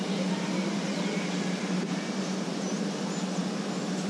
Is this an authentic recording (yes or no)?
yes